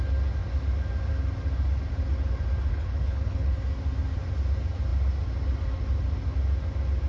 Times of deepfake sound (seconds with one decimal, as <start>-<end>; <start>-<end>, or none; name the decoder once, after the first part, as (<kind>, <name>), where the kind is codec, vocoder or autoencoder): 2.7-3.6 (codec, HILCodec)